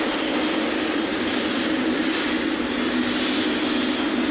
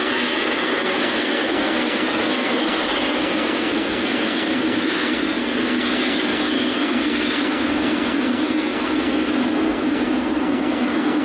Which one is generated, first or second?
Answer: second